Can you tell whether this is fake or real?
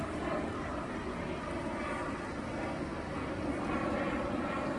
real